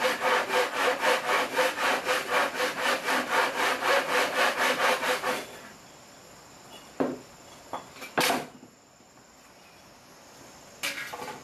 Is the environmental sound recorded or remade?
recorded